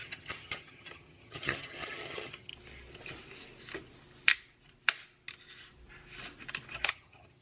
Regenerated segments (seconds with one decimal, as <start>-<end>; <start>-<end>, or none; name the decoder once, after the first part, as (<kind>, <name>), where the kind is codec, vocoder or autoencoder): 0.0-2.5 (vocoder, HiFi-GAN); 6.9-7.4